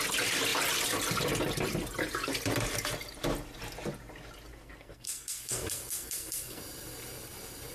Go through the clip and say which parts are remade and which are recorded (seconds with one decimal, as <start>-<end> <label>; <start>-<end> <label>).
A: 0.0-4.5 recorded; 4.5-6.6 remade; 6.6-7.7 recorded